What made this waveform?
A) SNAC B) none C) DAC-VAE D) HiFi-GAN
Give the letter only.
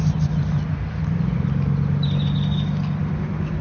B